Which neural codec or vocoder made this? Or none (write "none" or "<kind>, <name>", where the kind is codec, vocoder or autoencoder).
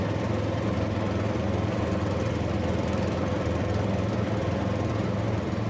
none